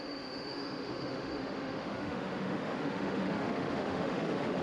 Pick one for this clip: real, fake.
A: fake